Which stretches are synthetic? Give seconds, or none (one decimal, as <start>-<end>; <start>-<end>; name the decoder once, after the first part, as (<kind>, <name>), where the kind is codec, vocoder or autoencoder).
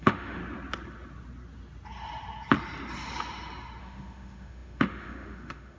0.0-0.4 (autoencoder, DAC-VAE); 3.8-5.8